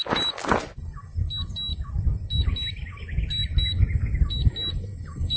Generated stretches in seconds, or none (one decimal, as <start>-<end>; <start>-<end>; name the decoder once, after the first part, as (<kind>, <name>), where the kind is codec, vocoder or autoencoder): none